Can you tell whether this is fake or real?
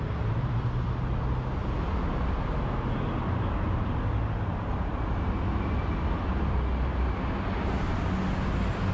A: real